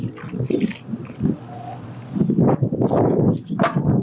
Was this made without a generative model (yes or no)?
yes